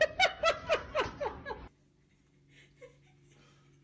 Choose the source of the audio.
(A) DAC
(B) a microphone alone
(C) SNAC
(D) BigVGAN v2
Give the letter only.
B